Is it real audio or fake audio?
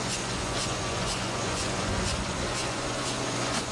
fake